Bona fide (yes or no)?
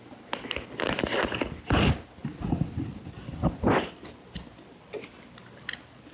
yes